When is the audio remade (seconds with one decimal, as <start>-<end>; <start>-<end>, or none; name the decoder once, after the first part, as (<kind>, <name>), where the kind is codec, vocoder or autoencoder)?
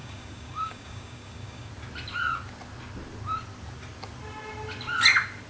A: 0.0-1.7 (codec, DAC)